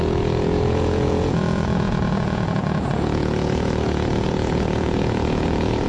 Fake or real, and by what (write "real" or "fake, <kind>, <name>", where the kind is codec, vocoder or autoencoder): fake, vocoder, Vocos